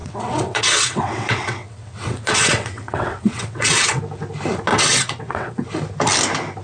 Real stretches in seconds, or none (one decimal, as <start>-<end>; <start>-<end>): 4.0-4.7; 5.7-6.6

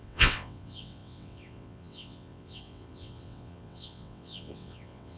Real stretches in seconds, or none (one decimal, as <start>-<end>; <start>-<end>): none

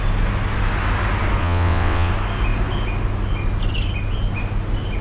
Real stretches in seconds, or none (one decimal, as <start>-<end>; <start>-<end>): 0.0-1.4; 2.1-5.0

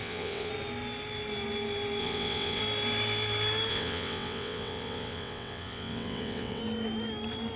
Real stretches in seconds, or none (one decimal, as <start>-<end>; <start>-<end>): 0.5-2.0; 2.6-3.7; 6.6-7.6

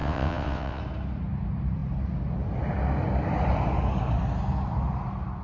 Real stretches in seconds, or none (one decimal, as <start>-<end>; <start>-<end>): 0.8-5.4

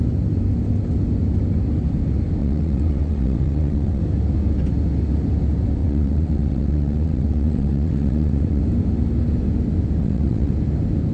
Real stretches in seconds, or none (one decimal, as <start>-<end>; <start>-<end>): 0.0-2.4; 4.0-5.8; 8.6-10.0; 10.5-11.1

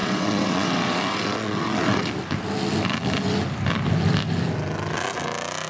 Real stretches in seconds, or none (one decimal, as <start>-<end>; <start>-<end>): 2.1-5.7

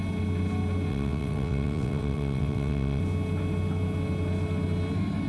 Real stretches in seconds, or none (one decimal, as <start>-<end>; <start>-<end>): 0.0-0.9; 3.0-5.3